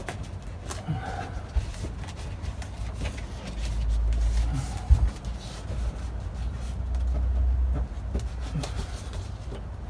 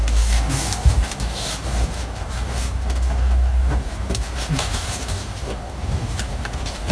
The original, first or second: first